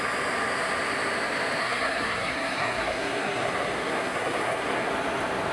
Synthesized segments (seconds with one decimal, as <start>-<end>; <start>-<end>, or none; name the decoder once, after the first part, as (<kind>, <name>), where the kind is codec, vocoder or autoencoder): 1.6-4.9 (codec, SNAC)